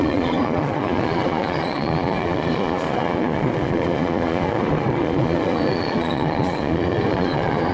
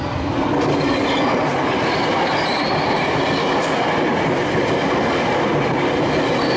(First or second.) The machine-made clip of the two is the first